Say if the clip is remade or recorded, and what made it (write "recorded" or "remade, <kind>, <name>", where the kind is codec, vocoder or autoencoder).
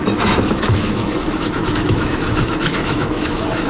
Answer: remade, autoencoder, DAC-VAE